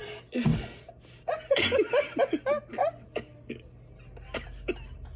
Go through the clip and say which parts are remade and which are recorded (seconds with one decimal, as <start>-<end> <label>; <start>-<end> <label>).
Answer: 0.0-5.2 recorded